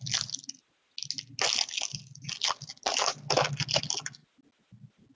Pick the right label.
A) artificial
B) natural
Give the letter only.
B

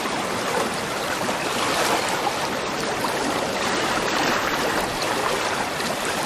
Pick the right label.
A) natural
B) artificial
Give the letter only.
A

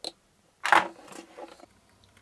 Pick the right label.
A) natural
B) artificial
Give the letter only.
A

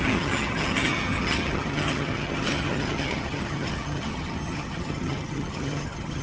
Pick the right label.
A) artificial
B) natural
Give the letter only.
A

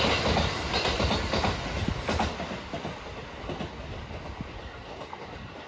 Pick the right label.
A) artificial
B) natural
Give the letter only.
B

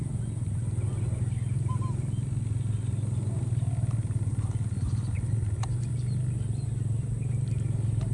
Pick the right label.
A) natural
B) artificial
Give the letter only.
A